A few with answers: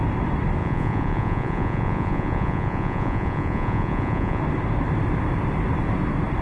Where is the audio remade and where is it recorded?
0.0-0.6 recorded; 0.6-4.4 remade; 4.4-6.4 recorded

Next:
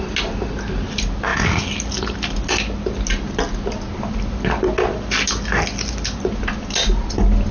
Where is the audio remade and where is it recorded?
0.0-7.5 recorded

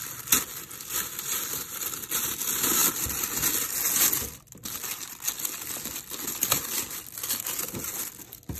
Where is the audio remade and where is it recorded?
0.0-8.6 recorded

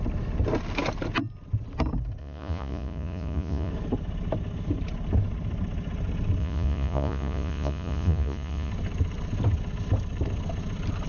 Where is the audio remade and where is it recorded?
0.0-2.2 recorded; 2.2-3.7 remade; 3.7-6.4 recorded; 6.4-8.7 remade; 8.7-11.1 recorded

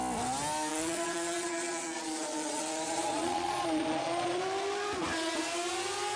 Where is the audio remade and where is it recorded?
0.0-0.7 recorded; 0.7-4.4 remade; 4.4-6.2 recorded

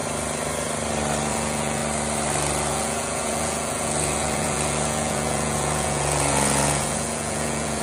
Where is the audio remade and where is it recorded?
0.0-1.3 recorded; 1.3-1.8 remade; 1.8-2.7 recorded; 2.7-7.8 remade

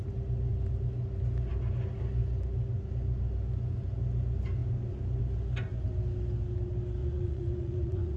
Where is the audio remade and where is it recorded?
0.0-7.0 recorded; 7.0-8.2 remade

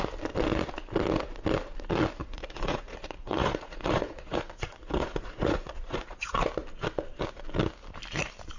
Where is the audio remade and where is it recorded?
0.0-2.2 recorded; 2.2-6.5 remade; 6.5-8.6 recorded